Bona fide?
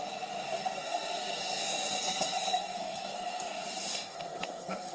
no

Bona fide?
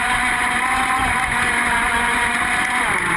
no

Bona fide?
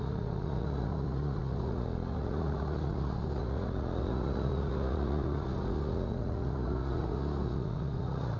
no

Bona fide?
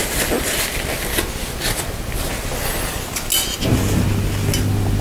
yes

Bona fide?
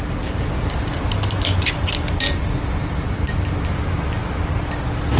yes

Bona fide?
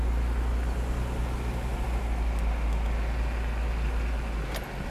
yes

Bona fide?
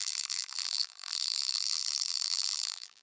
no